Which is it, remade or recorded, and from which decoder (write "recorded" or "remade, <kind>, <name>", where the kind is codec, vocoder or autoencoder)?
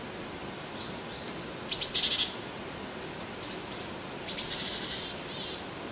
recorded